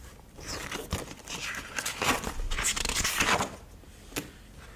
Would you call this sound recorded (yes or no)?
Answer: yes